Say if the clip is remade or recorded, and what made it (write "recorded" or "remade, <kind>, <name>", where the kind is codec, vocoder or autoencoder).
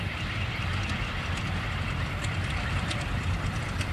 remade, vocoder, BigVGAN v2